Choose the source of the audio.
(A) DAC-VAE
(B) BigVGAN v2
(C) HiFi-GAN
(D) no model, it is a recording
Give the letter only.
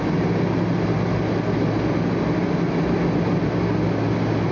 D